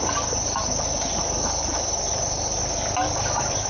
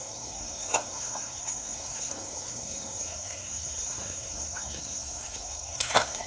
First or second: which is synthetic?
second